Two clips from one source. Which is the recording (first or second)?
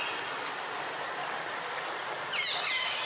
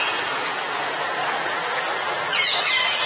first